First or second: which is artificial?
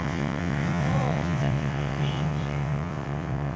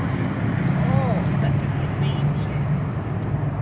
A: first